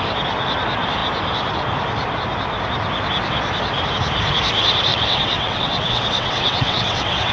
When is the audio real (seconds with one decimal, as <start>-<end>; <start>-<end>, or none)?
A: 0.0-4.9